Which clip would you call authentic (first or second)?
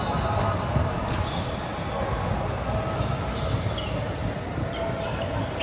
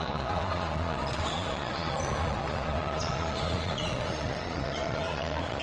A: first